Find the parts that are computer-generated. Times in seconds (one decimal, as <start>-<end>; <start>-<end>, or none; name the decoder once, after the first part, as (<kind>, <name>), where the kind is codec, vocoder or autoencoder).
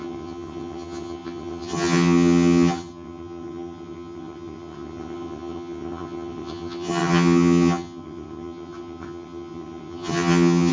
0.0-10.7 (vocoder, HiFi-GAN)